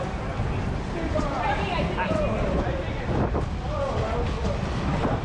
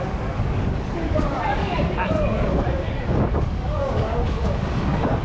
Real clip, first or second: first